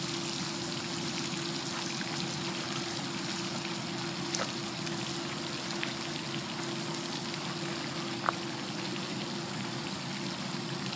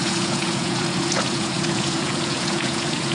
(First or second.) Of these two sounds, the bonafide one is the first